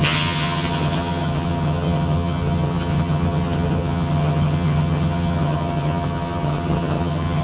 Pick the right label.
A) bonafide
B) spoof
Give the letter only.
B